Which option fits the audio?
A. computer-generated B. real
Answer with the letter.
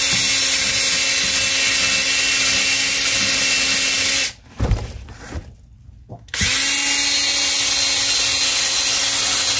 B